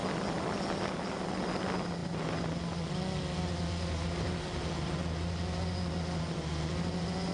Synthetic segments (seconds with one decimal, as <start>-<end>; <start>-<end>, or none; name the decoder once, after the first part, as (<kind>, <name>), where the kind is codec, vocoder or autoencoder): none